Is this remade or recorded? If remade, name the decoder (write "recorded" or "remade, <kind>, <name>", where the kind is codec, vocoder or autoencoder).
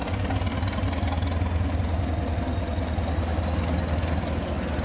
recorded